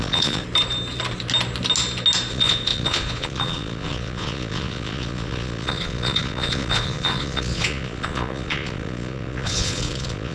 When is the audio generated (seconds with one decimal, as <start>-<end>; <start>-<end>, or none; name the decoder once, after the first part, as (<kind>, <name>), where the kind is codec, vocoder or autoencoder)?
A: 0.0-0.4 (vocoder, Vocos); 2.3-10.3